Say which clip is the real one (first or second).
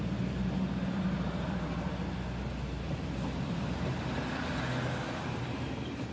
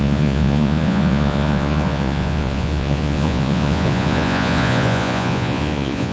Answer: first